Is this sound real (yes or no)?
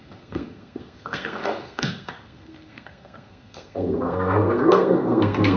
no